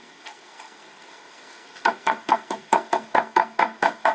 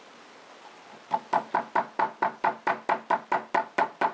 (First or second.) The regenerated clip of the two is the first